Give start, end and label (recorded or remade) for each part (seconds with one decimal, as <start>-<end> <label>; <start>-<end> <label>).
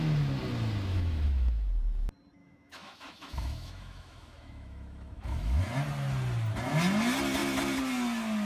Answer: 0.0-0.9 recorded; 0.9-1.7 remade; 1.7-2.4 recorded; 2.4-5.6 remade; 5.6-8.5 recorded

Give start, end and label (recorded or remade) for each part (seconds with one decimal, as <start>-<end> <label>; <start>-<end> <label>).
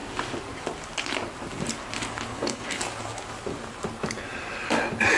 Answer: 0.0-2.3 recorded; 2.3-2.8 remade; 2.8-5.2 recorded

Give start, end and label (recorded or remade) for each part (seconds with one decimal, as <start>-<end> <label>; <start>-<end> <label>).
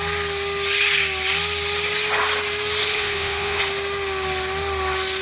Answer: 0.0-2.8 recorded; 2.8-3.6 remade; 3.6-5.2 recorded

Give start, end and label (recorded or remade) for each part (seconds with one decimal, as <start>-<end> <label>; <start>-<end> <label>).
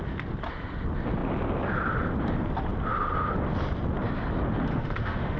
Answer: 0.0-4.7 recorded; 4.7-5.4 remade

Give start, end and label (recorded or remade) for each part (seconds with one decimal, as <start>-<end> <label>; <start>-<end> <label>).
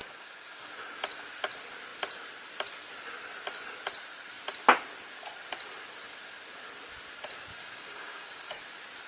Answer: 0.0-0.7 remade; 0.7-7.6 recorded; 7.6-8.6 remade; 8.6-9.1 recorded